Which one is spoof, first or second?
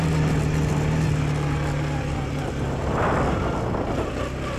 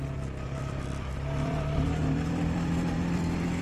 second